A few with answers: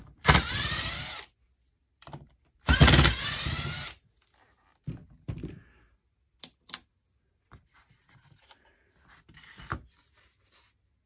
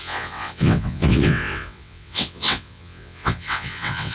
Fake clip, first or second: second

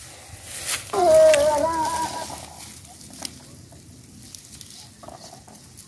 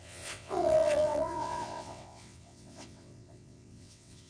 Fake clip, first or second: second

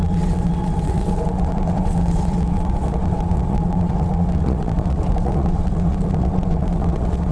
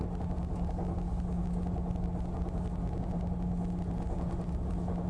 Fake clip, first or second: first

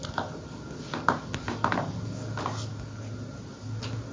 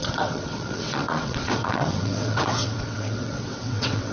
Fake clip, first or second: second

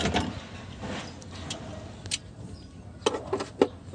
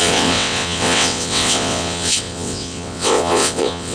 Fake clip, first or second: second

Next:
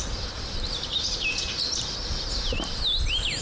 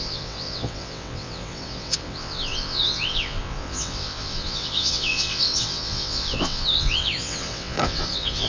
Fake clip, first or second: second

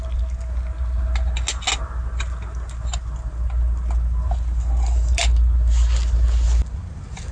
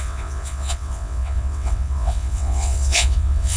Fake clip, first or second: second